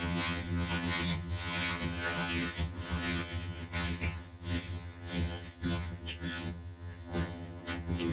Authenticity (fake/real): fake